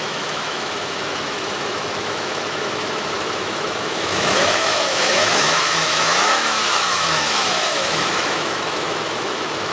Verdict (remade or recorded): remade